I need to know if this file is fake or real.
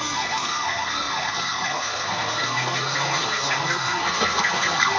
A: fake